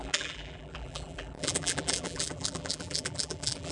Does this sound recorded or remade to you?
remade